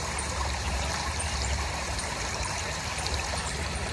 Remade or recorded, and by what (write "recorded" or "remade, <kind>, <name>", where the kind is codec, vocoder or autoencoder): remade, vocoder, BigVGAN v2